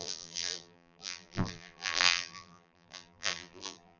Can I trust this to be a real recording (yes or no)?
no